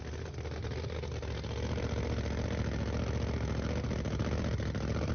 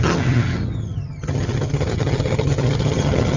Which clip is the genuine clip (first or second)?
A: first